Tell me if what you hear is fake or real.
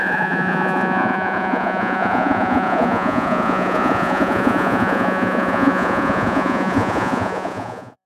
fake